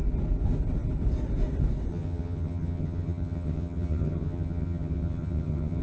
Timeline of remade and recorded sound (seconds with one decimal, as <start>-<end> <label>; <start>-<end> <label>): 0.0-1.9 recorded; 1.9-5.8 remade